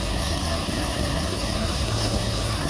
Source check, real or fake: fake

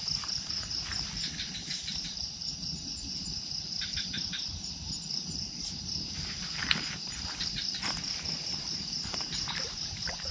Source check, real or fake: fake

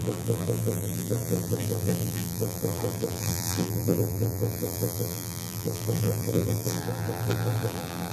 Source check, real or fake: fake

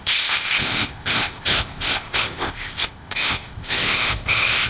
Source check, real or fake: fake